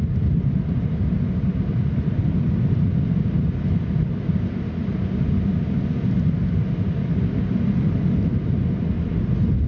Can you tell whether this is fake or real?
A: real